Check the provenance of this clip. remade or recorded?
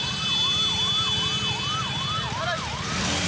recorded